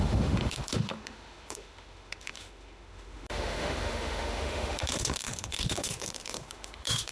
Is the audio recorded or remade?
remade